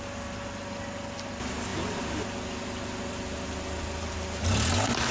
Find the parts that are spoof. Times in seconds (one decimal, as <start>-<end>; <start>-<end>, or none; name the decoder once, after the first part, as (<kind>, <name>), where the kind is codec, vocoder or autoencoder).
none